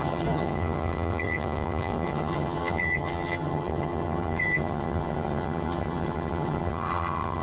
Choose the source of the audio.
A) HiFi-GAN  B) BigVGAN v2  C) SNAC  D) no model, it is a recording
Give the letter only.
A